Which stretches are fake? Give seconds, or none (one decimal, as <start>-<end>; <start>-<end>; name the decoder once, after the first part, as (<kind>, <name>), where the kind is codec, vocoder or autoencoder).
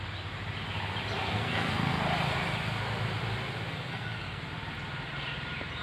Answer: 1.2-2.0 (codec, SNAC); 3.7-4.4